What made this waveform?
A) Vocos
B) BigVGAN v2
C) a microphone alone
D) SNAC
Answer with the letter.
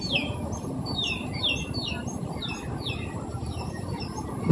C